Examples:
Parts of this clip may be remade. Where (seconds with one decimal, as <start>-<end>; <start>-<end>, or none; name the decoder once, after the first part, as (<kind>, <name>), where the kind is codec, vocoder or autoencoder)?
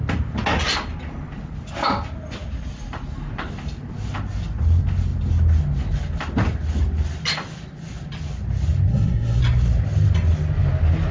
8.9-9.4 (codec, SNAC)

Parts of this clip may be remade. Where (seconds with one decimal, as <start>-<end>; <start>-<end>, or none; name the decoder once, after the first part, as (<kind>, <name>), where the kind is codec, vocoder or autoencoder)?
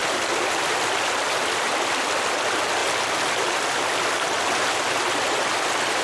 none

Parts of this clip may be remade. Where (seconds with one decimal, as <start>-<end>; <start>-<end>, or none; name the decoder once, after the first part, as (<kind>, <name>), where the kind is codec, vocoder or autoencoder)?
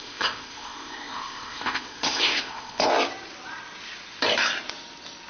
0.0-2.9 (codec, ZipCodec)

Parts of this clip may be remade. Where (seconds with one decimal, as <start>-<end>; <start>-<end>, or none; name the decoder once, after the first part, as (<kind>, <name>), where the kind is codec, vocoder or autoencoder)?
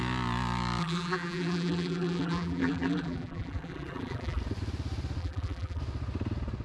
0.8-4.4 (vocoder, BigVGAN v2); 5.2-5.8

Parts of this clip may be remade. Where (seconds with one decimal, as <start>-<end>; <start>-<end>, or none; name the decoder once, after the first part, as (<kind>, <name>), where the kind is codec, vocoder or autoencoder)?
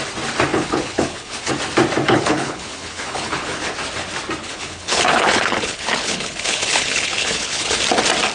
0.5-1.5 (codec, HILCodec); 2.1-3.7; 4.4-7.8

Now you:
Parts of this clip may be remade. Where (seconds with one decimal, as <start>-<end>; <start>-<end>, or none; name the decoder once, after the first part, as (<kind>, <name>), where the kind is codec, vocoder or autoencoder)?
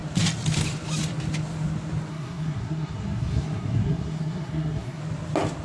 2.1-5.0 (codec, SNAC)